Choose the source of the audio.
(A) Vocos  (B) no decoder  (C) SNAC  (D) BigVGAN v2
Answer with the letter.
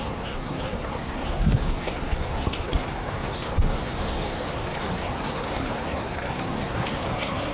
C